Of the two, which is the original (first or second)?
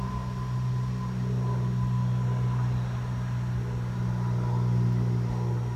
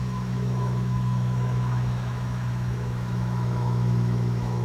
first